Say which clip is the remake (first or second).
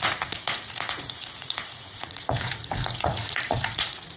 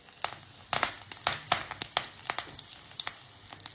first